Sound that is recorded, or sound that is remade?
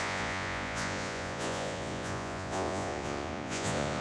remade